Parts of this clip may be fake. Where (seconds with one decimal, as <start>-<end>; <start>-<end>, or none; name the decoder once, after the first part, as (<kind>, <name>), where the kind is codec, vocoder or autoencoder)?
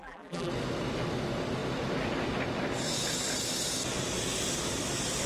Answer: 0.0-0.5 (vocoder, BigVGAN v2)